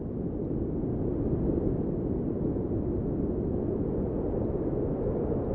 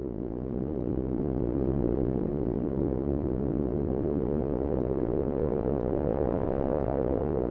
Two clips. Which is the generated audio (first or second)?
second